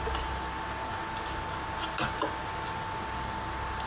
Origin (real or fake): real